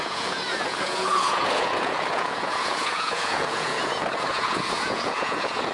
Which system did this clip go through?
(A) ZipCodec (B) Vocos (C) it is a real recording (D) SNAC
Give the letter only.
B